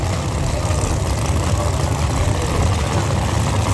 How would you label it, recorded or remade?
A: recorded